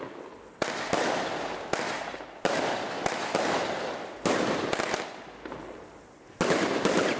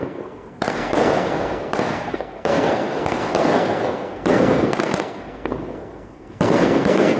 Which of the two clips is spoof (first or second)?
second